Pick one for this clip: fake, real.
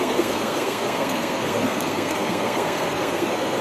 fake